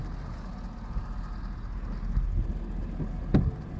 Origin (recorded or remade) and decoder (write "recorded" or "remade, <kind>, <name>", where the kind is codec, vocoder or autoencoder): recorded